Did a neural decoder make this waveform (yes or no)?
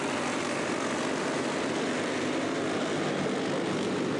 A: no